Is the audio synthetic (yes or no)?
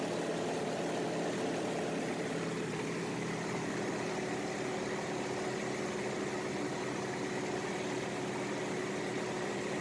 no